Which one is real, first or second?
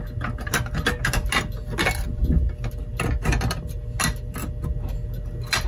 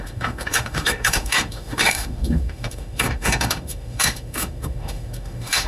first